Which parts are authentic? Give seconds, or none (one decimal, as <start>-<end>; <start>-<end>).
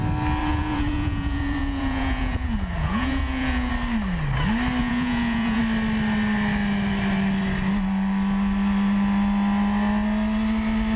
0.0-0.4; 3.7-4.8; 5.6-11.0